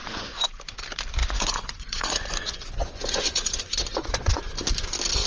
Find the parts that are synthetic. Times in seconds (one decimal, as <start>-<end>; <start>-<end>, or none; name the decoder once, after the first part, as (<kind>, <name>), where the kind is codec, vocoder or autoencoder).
0.0-0.6 (vocoder, Vocos); 1.2-4.4